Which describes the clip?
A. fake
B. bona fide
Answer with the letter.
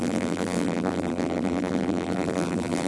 A